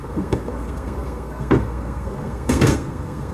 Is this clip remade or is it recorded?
remade